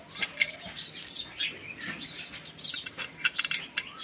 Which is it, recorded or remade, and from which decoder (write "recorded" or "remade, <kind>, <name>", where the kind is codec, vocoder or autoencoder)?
recorded